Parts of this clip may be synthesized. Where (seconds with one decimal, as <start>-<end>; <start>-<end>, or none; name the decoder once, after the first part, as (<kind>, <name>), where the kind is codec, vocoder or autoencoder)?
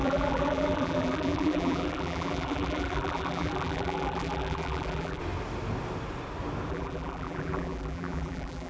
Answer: 0.0-5.2 (vocoder, BigVGAN v2); 6.7-8.7